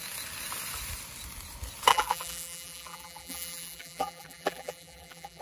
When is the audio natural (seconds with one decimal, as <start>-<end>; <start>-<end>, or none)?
0.0-1.9